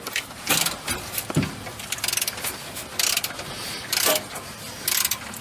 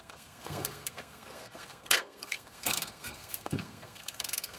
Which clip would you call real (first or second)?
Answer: first